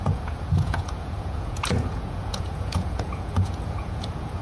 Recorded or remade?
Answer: remade